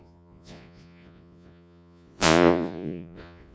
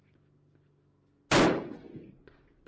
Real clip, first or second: second